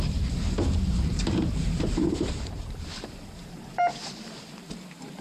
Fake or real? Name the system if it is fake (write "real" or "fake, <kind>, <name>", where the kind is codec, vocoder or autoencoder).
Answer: fake, vocoder, BigVGAN v2